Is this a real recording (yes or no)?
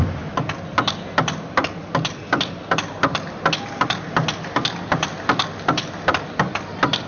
yes